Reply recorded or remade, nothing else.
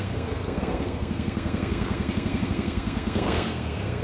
remade